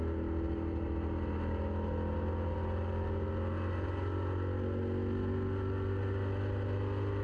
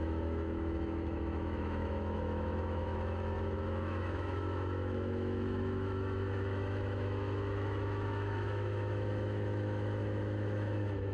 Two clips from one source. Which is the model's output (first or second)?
second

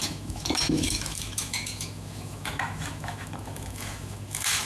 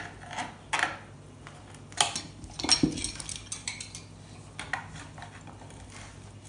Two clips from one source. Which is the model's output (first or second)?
first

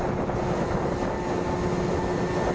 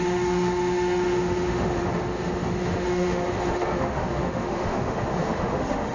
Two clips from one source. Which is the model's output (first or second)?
second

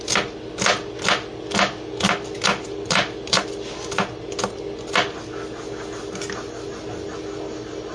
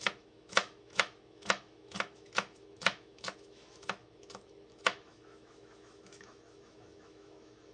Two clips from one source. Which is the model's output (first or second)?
second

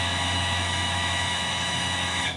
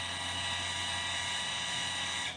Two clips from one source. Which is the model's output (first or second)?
first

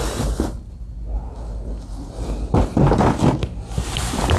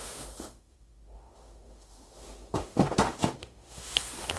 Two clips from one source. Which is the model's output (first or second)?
second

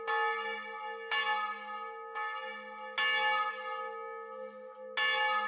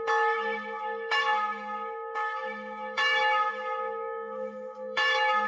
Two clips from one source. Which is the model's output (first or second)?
second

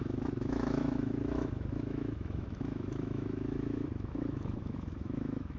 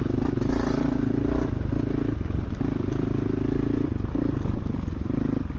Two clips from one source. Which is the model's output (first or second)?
first